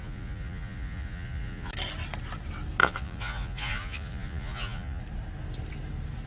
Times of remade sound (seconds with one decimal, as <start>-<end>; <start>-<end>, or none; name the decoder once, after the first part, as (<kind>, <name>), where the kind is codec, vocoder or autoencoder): 0.0-1.7 (vocoder, Vocos); 2.8-5.0